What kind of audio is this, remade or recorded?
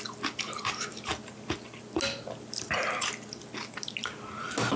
recorded